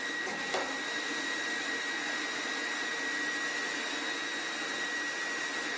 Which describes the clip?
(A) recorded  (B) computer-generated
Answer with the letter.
A